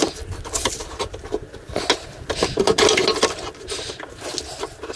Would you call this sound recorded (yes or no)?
yes